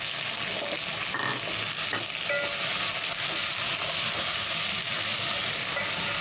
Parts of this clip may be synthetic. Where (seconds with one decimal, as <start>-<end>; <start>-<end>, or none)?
none